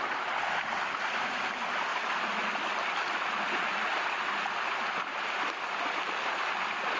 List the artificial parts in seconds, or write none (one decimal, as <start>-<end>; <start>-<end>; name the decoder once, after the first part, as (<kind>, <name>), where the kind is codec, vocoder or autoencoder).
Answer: none